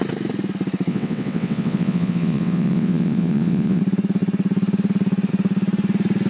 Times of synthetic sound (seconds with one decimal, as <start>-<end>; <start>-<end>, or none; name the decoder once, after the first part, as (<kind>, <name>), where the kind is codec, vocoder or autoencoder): 0.9-3.8 (vocoder, WaveNeXt)